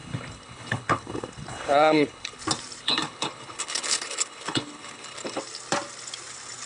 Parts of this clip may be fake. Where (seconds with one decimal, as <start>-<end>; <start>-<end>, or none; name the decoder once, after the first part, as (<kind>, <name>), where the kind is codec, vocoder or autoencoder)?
0.0-2.4 (codec, HILCodec); 2.8-5.4